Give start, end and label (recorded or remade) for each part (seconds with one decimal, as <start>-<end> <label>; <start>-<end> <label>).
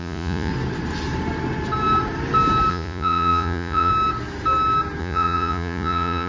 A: 0.0-0.5 remade; 0.5-2.7 recorded; 2.7-3.9 remade; 3.9-5.0 recorded; 5.0-6.3 remade